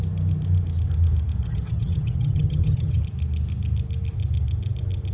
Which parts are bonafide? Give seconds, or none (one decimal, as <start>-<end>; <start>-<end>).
0.0-1.4; 3.0-5.1